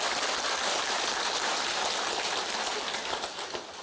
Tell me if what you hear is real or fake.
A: real